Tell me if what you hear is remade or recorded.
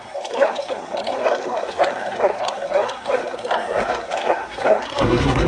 remade